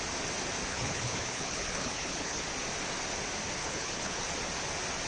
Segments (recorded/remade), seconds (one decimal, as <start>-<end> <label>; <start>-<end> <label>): 0.0-0.7 recorded; 0.7-2.4 remade; 2.4-3.6 recorded; 3.6-4.2 remade; 4.2-5.1 recorded